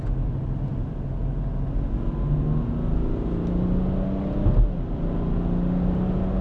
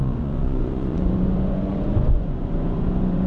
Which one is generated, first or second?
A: second